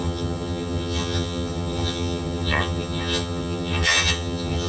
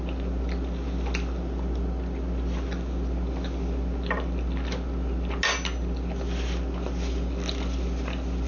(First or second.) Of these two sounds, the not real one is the first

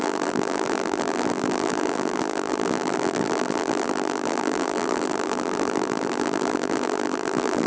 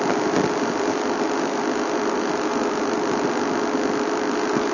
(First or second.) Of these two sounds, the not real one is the first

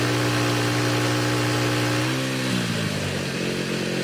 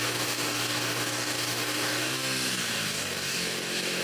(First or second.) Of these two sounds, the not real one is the second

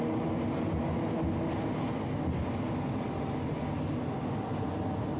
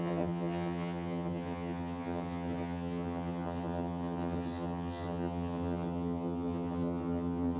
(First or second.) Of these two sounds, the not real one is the second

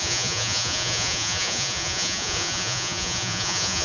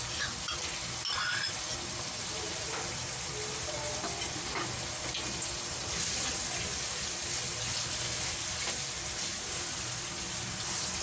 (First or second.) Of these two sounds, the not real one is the first